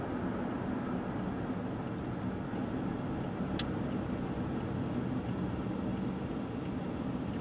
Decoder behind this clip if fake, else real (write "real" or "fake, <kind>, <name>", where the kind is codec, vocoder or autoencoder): real